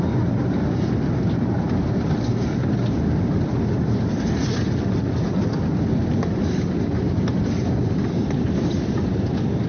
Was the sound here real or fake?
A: real